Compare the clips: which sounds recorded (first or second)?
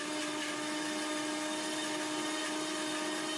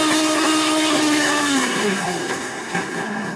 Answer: first